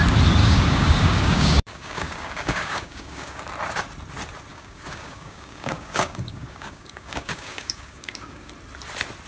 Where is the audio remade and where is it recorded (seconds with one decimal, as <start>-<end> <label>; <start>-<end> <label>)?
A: 0.0-0.4 recorded; 0.4-3.5 remade; 3.5-4.5 recorded; 4.5-8.5 remade; 8.5-9.3 recorded